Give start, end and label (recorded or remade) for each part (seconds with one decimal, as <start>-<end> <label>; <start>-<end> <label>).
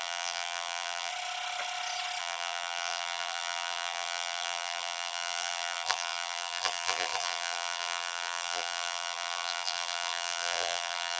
0.0-1.1 remade; 1.1-2.2 recorded; 2.2-11.2 remade